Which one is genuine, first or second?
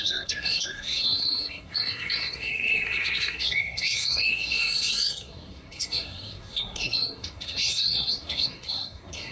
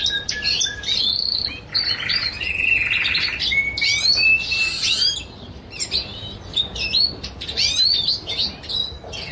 second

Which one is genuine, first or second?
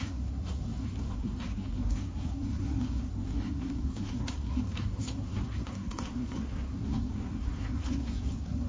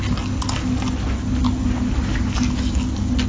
second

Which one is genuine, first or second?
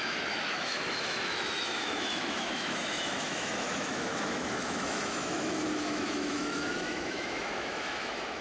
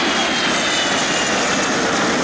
second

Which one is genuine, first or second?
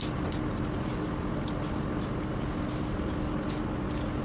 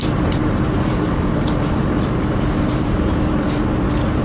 first